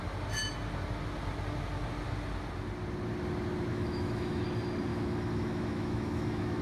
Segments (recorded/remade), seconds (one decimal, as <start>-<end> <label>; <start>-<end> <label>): 0.0-3.7 recorded; 3.7-4.4 remade; 4.4-4.9 recorded; 4.9-6.6 remade